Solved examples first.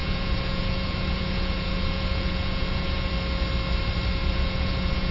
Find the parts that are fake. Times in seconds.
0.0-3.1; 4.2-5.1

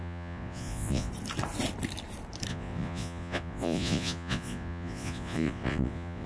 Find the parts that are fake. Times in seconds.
0.0-1.1; 2.5-6.3